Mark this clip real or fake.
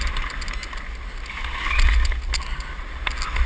real